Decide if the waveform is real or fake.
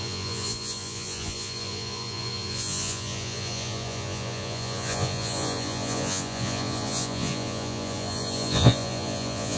fake